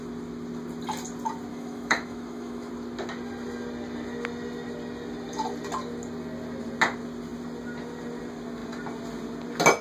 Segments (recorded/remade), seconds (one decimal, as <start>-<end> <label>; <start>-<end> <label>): 0.0-1.5 recorded; 1.5-2.7 remade; 2.7-9.8 recorded